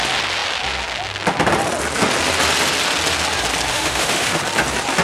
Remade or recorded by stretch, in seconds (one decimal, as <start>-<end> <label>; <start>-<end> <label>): 0.0-3.7 recorded; 3.7-4.4 remade; 4.4-5.0 recorded